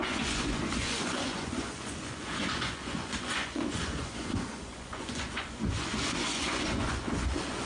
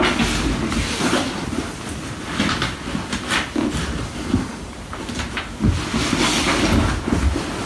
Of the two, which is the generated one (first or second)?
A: first